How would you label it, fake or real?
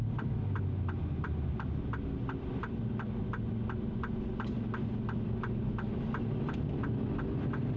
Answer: real